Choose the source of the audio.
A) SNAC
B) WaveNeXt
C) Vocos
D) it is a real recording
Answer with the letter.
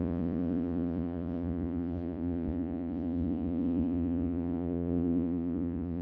C